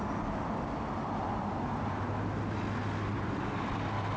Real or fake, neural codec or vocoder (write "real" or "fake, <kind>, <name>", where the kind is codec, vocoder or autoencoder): real